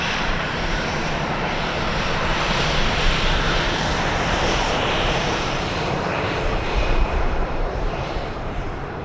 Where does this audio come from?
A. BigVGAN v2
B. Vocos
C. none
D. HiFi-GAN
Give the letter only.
A